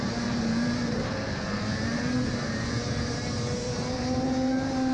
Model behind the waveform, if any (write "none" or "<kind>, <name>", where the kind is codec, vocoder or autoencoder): vocoder, BigVGAN v2